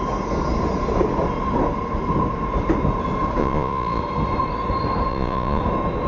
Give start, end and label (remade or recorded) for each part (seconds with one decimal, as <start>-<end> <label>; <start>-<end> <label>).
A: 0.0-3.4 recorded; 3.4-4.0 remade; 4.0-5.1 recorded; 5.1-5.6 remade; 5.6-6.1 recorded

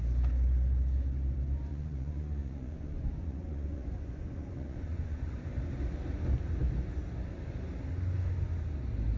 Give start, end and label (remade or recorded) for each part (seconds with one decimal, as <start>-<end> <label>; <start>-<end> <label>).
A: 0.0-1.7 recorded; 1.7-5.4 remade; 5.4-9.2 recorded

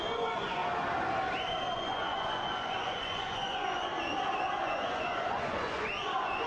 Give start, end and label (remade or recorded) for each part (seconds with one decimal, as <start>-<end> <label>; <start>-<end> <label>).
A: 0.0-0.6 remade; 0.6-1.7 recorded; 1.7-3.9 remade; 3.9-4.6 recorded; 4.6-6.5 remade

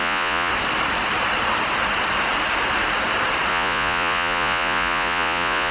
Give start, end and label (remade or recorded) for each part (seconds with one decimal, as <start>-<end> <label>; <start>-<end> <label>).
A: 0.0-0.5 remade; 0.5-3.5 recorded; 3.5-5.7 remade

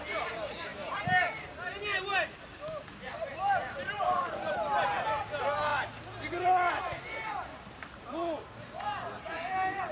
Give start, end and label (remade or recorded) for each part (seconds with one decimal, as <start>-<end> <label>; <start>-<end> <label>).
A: 0.0-9.9 recorded